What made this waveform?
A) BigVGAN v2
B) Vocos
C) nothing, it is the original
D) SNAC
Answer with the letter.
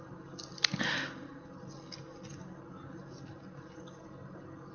C